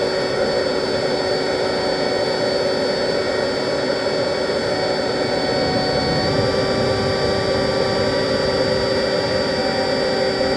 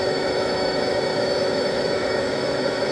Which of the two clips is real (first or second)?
first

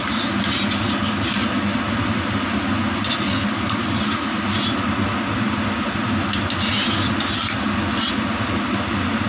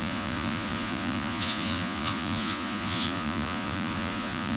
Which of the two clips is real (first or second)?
first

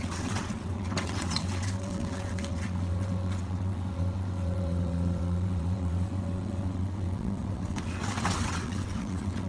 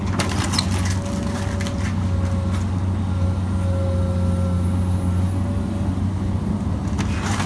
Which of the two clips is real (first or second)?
second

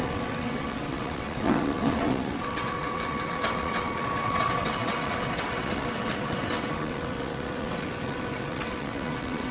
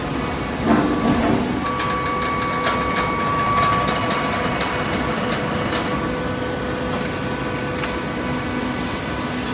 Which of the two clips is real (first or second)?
second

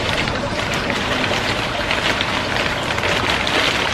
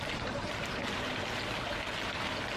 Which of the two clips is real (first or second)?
second